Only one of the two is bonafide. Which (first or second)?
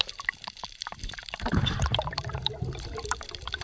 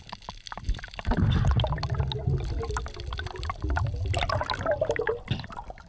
second